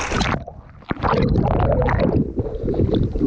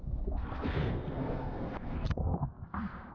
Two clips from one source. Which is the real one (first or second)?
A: first